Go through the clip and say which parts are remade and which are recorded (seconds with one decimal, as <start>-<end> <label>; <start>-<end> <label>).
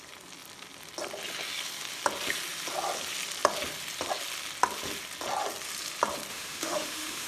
0.0-6.3 recorded; 6.3-7.3 remade